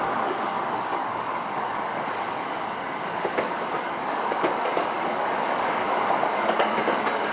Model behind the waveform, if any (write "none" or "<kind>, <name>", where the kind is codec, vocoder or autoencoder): codec, DAC